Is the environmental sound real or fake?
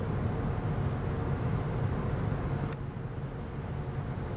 real